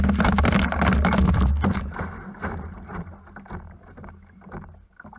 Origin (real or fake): real